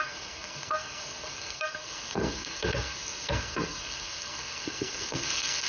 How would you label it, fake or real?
fake